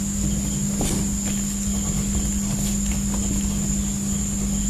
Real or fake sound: real